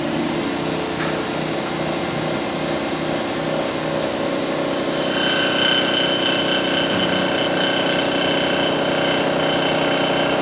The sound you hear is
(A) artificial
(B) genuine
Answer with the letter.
B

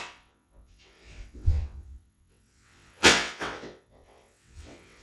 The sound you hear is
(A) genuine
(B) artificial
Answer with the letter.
B